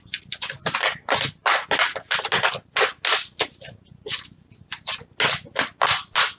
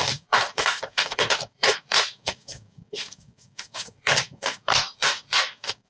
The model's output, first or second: second